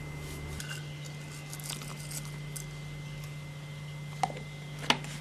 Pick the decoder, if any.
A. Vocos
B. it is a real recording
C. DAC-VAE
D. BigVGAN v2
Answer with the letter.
B